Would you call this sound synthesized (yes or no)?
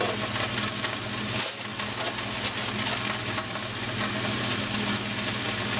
no